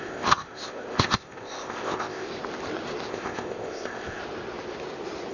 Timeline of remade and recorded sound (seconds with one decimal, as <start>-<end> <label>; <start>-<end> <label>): 0.0-2.3 remade; 2.3-3.1 recorded; 3.1-4.2 remade; 4.2-5.3 recorded